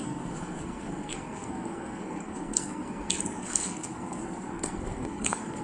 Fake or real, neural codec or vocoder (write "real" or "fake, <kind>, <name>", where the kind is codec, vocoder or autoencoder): fake, codec, SNAC